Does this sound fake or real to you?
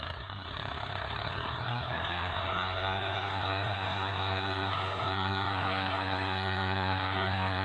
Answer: fake